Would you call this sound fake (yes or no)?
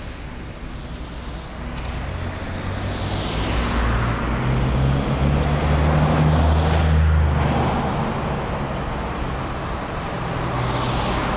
no